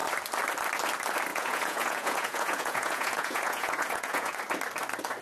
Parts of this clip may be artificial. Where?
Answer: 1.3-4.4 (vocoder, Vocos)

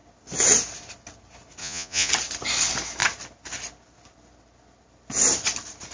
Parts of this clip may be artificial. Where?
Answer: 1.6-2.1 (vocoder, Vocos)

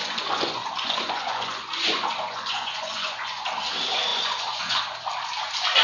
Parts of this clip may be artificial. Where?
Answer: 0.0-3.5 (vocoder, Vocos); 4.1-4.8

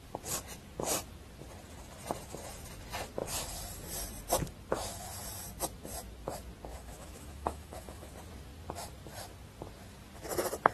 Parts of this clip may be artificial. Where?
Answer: 6.7-8.1 (autoencoder, DAC-VAE)

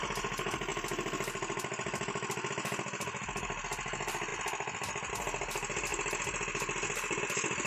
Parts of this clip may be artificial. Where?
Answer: none

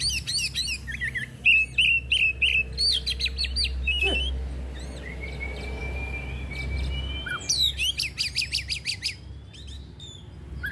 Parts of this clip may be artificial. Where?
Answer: none

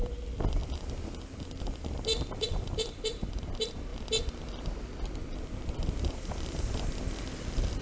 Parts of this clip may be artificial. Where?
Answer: 0.0-0.6 (vocoder, BigVGAN v2); 1.4-3.9; 6.1-7.8

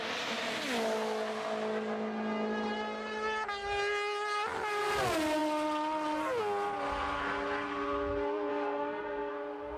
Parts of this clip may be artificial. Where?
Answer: 8.5-9.3 (codec, SNAC)